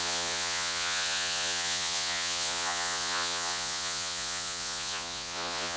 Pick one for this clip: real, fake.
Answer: fake